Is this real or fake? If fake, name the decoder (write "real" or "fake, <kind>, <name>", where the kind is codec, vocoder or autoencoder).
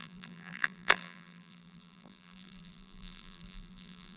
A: fake, vocoder, BigVGAN v2